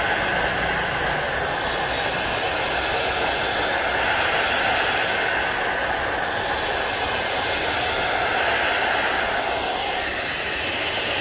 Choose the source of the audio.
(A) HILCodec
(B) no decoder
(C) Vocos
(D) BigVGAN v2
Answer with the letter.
B